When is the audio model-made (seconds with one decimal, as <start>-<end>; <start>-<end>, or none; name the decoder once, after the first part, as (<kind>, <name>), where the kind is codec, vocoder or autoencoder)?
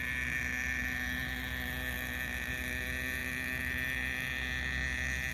none